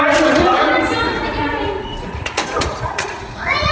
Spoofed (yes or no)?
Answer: yes